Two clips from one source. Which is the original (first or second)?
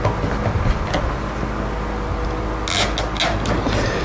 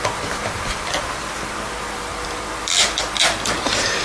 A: first